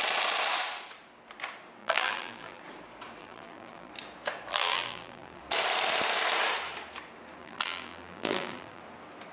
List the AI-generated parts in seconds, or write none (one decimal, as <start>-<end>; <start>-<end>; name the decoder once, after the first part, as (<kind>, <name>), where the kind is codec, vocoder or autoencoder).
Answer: 1.8-2.6 (vocoder, BigVGAN v2); 3.2-3.9; 4.5-5.4; 7.4-8.8